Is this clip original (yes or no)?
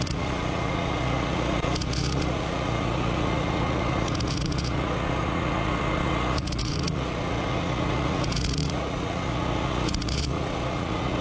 no